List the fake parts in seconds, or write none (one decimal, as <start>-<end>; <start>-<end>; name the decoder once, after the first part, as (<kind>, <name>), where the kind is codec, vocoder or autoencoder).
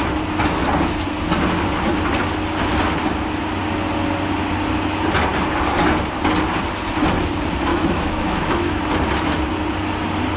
7.7-8.8 (autoencoder, DAC-VAE)